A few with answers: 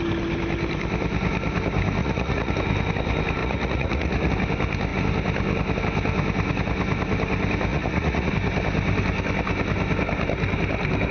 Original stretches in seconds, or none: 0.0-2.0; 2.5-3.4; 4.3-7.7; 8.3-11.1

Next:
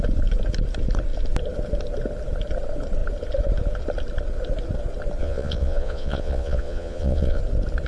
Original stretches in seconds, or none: 0.0-5.2; 7.4-7.9

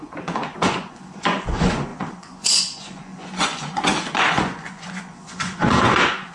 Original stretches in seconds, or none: none

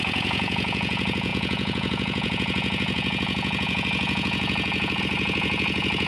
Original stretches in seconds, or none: none

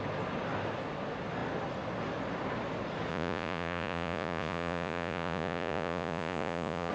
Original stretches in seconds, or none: 0.0-3.1